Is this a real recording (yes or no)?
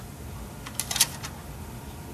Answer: yes